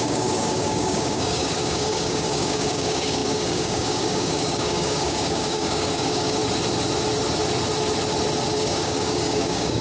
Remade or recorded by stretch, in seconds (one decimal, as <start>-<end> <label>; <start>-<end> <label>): 0.0-6.4 remade; 6.4-8.5 recorded; 8.5-9.8 remade